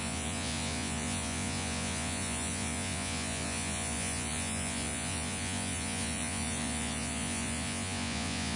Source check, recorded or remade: remade